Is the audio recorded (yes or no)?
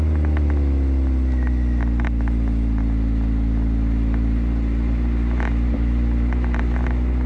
yes